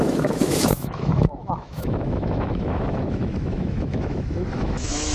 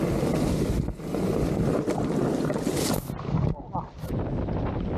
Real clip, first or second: second